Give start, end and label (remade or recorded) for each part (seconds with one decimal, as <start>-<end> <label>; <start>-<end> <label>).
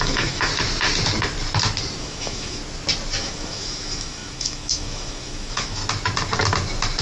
0.0-0.5 remade; 0.5-2.0 recorded; 2.0-2.6 remade; 2.6-3.2 recorded; 3.2-5.8 remade; 5.8-7.0 recorded